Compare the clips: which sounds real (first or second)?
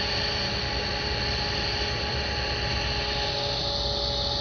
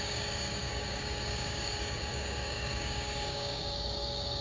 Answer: first